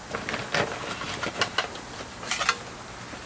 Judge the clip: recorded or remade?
recorded